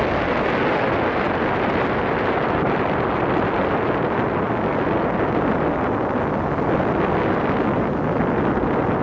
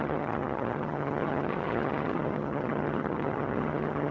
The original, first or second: first